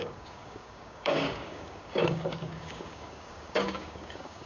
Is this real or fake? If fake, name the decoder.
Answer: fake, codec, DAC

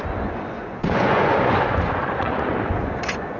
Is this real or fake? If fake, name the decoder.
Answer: fake, vocoder, Vocos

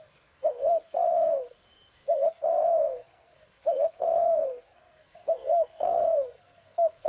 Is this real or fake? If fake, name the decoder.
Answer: fake, codec, SNAC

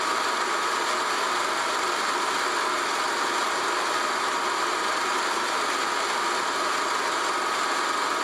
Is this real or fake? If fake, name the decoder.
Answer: real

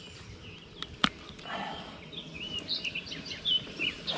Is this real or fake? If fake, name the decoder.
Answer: real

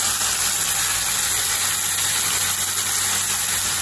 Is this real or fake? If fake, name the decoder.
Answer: real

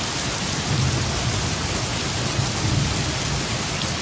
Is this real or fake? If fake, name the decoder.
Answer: real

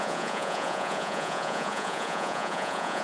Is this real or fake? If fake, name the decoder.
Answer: fake, vocoder, Vocos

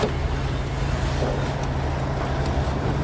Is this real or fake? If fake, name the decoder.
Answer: real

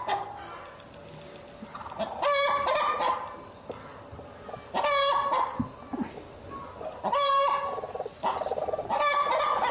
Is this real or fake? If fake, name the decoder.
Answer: real